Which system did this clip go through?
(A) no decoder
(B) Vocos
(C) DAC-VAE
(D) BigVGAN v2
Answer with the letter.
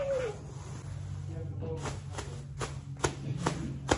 A